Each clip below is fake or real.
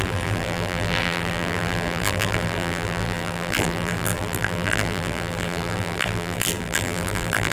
fake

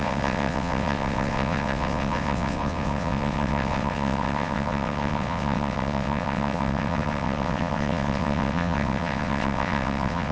fake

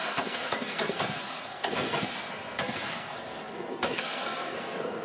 fake